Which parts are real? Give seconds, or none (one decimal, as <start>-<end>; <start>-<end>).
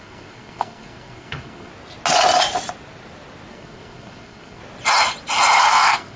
1.7-3.5; 4.6-5.6